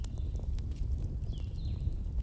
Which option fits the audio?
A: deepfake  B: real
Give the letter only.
B